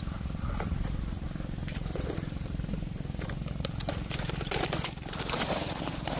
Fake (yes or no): yes